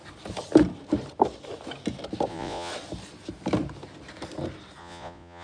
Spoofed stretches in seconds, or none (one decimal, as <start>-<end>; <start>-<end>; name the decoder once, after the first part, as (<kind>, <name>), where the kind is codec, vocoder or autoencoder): 2.3-2.7 (vocoder, Vocos); 4.8-5.4